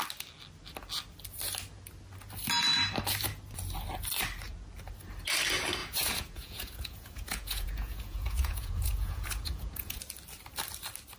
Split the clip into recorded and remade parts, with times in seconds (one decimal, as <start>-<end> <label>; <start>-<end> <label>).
0.0-5.8 recorded; 5.8-10.0 remade; 10.0-11.2 recorded